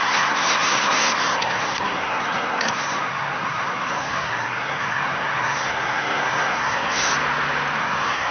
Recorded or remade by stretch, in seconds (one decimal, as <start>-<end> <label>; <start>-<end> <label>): 0.0-7.1 remade; 7.1-7.8 recorded; 7.8-8.3 remade